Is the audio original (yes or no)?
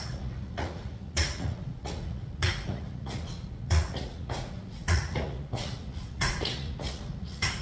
no